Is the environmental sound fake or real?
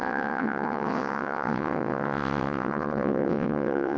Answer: fake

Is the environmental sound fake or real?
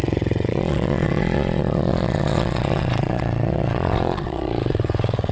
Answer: fake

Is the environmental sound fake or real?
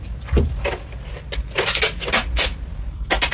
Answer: real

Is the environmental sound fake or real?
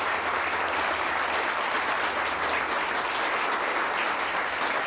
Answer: real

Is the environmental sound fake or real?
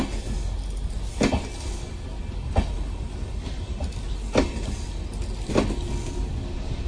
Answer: real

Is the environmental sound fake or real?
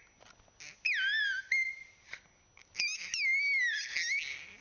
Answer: real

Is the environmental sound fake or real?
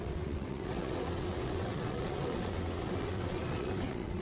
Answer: fake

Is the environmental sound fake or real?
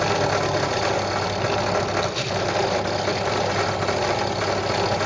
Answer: real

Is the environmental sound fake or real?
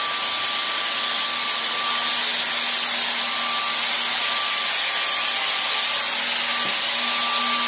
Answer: real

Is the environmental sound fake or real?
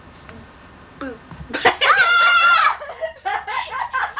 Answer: real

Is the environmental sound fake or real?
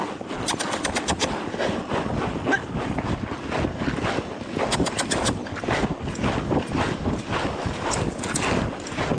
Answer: real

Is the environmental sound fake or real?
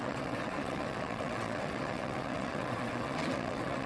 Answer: fake